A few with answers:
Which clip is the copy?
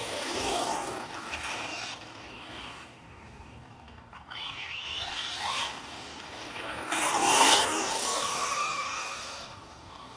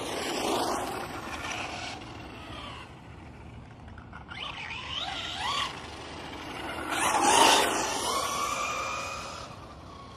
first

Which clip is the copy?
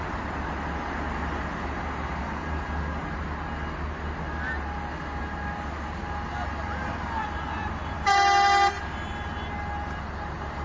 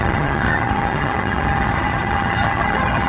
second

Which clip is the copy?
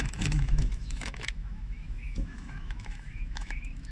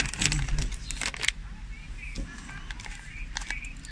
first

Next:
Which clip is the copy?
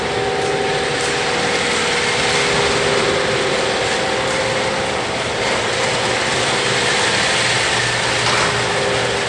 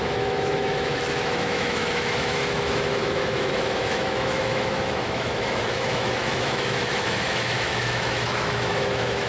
second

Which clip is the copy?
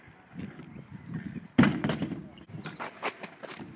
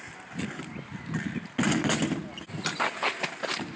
first